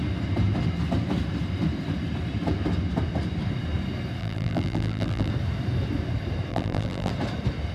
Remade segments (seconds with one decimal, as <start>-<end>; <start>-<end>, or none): 4.2-5.3; 6.5-7.1